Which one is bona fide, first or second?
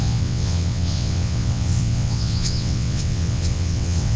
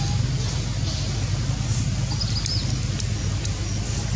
second